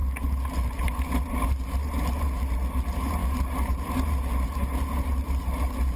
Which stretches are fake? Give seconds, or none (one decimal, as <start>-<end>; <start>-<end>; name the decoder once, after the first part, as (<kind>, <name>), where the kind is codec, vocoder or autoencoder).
0.0-6.0 (vocoder, BigVGAN v2)